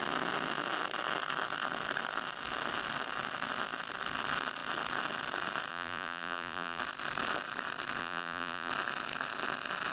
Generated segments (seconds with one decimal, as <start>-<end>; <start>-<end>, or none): 5.7-6.8; 8.0-8.7